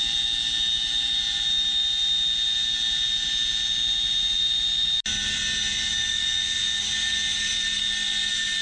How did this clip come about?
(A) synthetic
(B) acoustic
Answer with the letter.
B